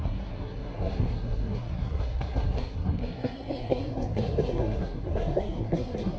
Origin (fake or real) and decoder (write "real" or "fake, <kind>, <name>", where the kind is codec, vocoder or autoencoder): fake, codec, SNAC